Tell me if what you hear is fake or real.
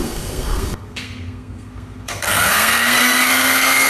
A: fake